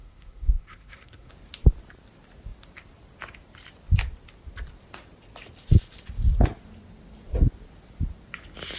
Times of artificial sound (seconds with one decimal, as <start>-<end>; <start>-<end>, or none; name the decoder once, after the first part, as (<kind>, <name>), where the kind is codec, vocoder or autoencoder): 0.0-1.3 (codec, SNAC)